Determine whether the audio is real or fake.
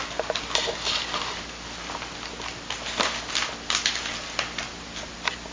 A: real